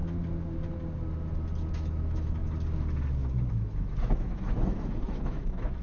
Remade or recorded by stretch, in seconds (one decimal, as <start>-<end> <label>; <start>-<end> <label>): 0.0-1.7 recorded; 1.7-2.4 remade; 2.4-3.5 recorded; 3.5-5.8 remade